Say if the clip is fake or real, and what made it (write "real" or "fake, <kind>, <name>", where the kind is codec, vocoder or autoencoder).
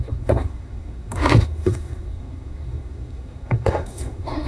fake, codec, SNAC